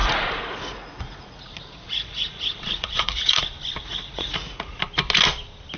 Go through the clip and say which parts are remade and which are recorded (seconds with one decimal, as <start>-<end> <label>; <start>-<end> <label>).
0.0-3.4 remade; 3.4-3.8 recorded; 3.8-4.8 remade; 4.8-5.8 recorded